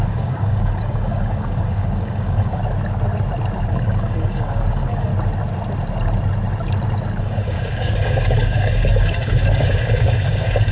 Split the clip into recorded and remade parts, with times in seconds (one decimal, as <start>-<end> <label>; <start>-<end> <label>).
0.0-2.6 remade; 2.6-3.7 recorded; 3.7-5.1 remade; 5.1-7.2 recorded; 7.2-10.7 remade